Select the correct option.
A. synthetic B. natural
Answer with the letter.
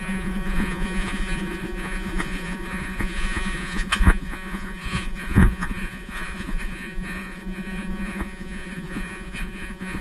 A